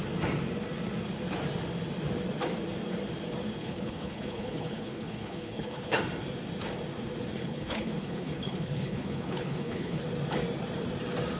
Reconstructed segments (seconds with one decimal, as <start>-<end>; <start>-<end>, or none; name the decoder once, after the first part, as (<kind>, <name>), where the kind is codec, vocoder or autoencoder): 3.6-6.0 (codec, HILCodec); 7.3-10.0